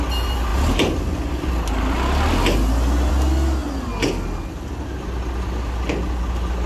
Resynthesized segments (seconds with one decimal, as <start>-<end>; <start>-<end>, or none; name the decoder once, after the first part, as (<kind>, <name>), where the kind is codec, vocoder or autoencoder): none